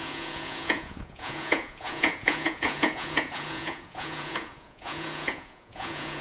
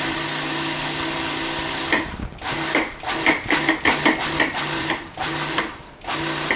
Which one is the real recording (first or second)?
second